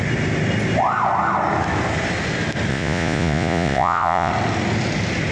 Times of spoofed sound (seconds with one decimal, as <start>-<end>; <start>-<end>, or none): 2.7-4.3